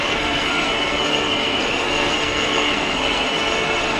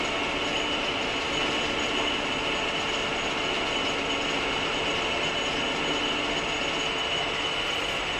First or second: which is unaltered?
second